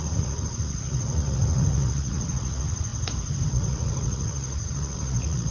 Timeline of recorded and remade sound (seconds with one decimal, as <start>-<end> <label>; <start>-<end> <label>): 0.0-2.9 remade; 2.9-3.5 recorded; 3.5-5.5 remade

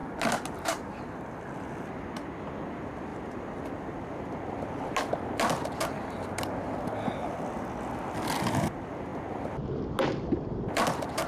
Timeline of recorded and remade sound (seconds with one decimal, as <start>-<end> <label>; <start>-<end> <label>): 0.0-3.1 recorded; 3.1-3.9 remade; 3.9-11.3 recorded

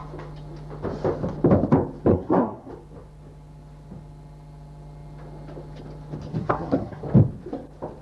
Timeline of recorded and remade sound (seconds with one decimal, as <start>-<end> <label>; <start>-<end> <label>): 0.0-2.1 recorded; 2.1-2.7 remade; 2.7-6.3 recorded; 6.3-7.0 remade; 7.0-8.0 recorded

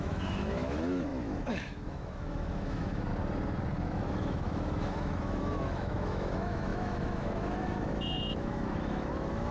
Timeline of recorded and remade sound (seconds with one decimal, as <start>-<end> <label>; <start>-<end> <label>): 0.0-3.1 remade; 3.1-3.8 recorded; 3.8-9.5 remade

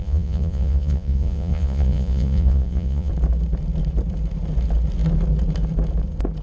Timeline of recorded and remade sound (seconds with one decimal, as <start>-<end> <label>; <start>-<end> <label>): 0.0-3.1 remade; 3.1-6.4 recorded

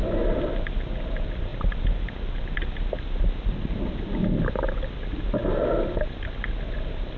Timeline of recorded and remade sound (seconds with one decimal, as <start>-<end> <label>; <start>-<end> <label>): 0.0-7.2 recorded